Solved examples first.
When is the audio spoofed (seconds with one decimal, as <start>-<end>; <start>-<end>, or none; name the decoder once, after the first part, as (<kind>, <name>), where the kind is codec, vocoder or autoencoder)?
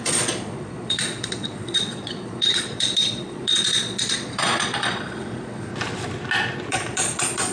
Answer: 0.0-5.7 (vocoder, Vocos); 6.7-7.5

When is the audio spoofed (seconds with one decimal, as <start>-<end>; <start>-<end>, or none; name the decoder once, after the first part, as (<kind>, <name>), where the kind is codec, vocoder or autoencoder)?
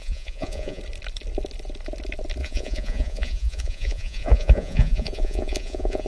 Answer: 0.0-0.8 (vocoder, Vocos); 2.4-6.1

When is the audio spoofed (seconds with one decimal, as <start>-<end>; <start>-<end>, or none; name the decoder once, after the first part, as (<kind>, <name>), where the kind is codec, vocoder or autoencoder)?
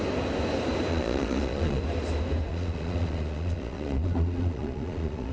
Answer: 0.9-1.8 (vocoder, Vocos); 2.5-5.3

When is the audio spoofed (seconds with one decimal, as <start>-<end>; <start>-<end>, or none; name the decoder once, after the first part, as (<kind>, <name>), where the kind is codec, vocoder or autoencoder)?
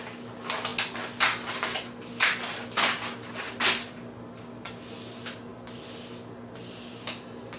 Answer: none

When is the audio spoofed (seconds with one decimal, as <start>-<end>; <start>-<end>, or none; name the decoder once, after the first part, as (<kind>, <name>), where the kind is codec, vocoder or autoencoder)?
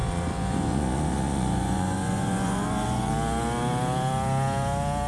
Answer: 0.0-3.1 (vocoder, Vocos)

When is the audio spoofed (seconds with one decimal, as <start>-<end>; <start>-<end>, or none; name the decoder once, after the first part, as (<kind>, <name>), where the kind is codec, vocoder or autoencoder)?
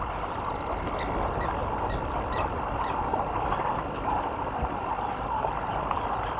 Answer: none